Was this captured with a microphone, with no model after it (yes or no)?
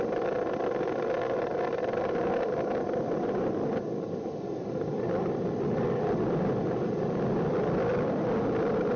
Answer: yes